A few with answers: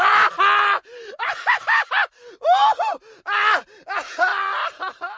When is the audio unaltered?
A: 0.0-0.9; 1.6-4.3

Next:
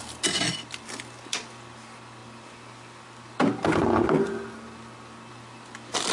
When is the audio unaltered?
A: 0.0-6.1

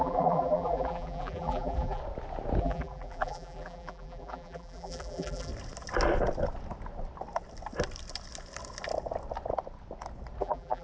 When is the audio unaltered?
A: 2.0-2.6; 5.5-10.4

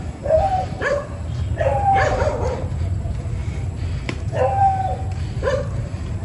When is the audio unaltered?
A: 3.4-4.0; 4.6-5.3

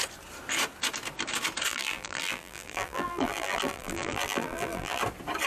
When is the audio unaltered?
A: 0.0-1.7; 5.0-5.5

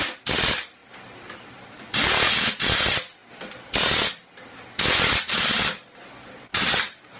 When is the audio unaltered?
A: 0.0-6.5

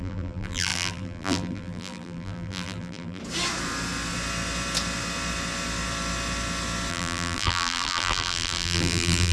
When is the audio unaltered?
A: 3.2-6.9

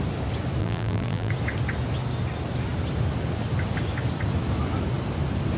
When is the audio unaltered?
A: 0.0-0.6; 1.3-5.6